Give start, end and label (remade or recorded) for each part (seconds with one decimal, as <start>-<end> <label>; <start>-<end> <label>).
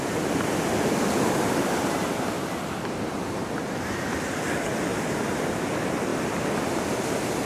0.0-4.9 recorded; 4.9-5.5 remade; 5.5-7.5 recorded